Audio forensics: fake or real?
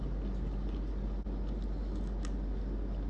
real